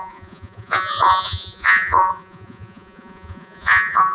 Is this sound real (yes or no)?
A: no